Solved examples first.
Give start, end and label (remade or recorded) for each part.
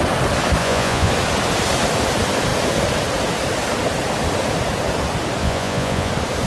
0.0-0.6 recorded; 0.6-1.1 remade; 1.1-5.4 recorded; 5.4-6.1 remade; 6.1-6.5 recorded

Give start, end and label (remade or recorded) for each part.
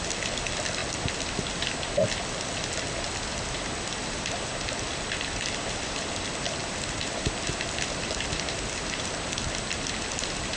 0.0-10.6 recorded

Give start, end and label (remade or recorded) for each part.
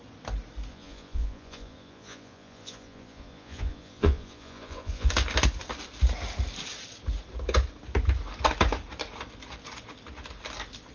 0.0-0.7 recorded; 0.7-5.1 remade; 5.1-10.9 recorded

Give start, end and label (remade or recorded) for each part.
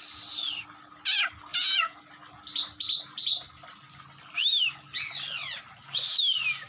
0.0-1.5 recorded; 1.5-2.0 remade; 2.0-6.7 recorded